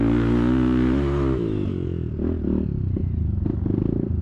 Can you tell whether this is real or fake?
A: real